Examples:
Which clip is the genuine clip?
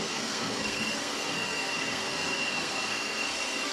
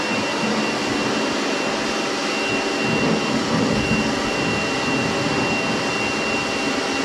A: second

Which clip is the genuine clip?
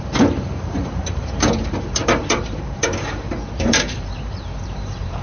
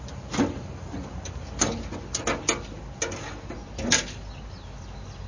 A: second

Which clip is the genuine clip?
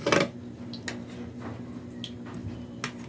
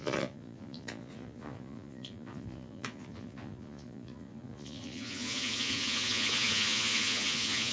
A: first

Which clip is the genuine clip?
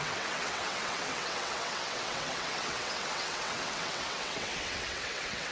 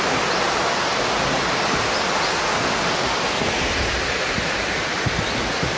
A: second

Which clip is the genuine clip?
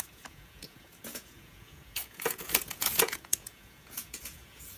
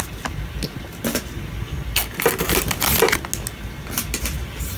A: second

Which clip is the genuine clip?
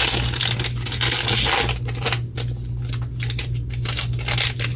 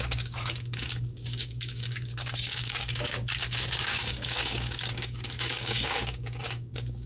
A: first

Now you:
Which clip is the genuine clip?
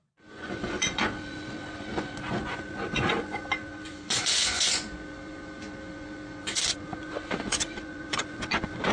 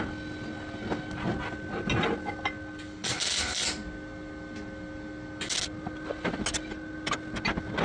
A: second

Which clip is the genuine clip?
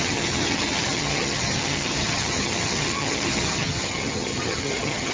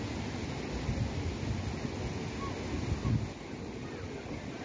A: second